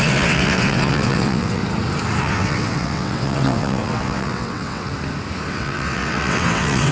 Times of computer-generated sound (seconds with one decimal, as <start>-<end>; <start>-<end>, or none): 0.0-1.6; 2.2-4.9; 5.5-6.9